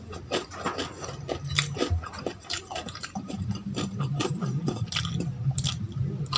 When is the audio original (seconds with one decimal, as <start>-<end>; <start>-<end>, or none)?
0.0-1.5; 4.8-6.4